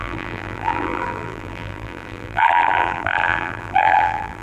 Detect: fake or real fake